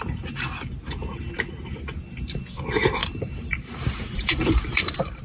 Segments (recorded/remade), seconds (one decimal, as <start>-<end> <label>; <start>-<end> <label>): 0.0-3.0 recorded; 3.0-5.2 remade